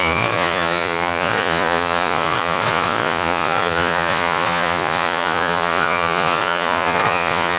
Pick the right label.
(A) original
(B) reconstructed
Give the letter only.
B